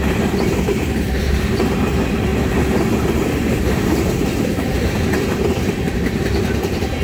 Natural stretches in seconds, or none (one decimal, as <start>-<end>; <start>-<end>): 2.3-3.2